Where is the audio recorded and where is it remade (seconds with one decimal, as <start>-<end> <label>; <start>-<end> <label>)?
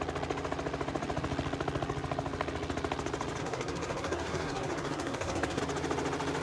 0.0-3.4 recorded; 3.4-5.6 remade; 5.6-6.4 recorded